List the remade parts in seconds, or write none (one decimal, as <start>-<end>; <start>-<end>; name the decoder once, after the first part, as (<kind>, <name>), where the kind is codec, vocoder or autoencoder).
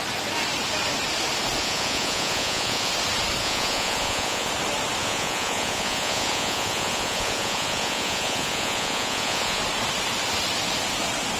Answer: 1.6-2.9 (vocoder, Vocos); 3.4-4.5; 5.0-9.6